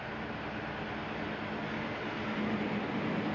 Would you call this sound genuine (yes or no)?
yes